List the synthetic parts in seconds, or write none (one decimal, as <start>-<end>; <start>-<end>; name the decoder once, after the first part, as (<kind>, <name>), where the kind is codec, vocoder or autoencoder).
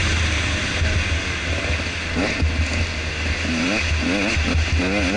none